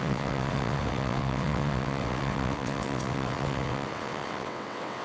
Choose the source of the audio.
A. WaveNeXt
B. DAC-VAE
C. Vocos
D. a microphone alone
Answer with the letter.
A